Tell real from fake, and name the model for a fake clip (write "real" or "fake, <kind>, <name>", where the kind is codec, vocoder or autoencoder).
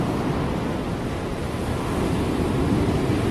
real